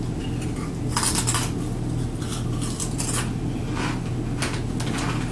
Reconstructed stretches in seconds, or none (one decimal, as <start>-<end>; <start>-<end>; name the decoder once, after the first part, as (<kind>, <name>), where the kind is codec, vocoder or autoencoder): none